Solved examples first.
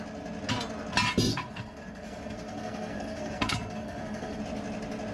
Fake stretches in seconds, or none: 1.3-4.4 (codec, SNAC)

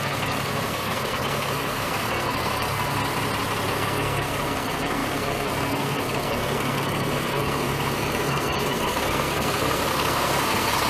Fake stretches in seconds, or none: 0.0-3.0 (codec, SNAC); 3.7-10.9

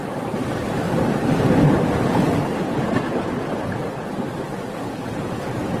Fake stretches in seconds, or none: 0.0-3.0 (vocoder, BigVGAN v2)

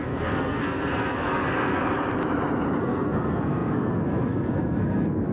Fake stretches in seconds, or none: 0.0-1.8 (codec, SNAC); 2.8-5.3

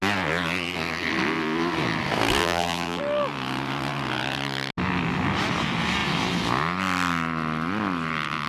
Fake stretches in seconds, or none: 2.4-3.0 (vocoder, BigVGAN v2)

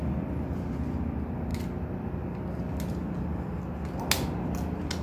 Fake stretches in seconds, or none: none